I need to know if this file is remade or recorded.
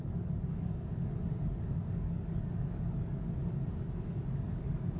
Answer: remade